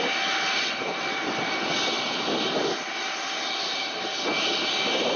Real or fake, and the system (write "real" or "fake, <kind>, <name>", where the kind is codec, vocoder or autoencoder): real